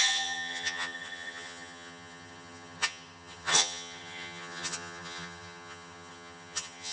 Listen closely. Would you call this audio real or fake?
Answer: fake